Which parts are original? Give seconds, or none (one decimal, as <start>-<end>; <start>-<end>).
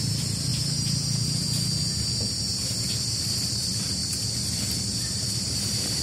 0.5-3.5; 4.0-4.8